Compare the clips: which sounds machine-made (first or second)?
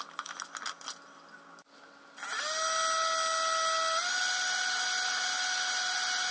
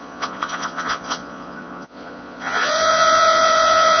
second